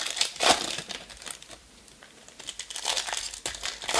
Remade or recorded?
recorded